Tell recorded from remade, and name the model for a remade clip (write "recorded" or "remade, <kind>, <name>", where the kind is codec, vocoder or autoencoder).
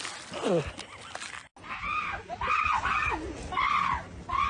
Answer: recorded